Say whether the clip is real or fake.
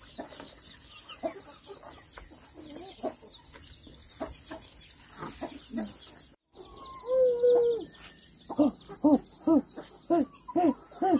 real